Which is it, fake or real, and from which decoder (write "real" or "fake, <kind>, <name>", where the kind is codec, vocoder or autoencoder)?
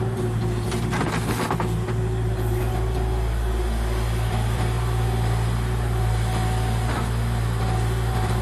real